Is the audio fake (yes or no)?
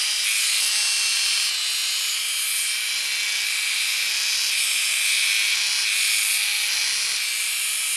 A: no